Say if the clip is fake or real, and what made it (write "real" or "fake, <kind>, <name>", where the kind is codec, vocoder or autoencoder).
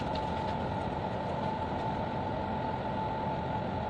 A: real